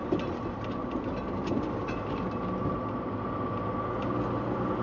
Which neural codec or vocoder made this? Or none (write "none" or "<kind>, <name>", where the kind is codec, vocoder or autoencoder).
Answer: none